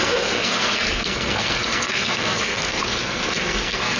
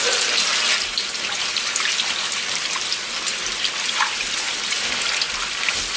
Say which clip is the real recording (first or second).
second